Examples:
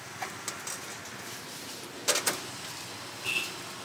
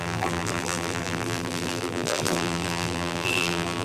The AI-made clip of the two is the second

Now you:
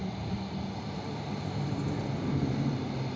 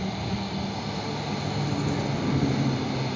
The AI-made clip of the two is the first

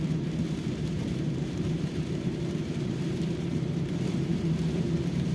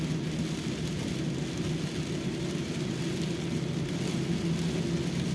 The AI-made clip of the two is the first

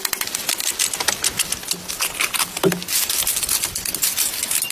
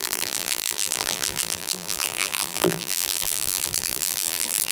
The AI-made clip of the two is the second